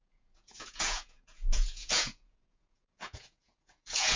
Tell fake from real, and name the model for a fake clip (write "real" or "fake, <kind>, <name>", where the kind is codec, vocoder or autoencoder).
fake, vocoder, Vocos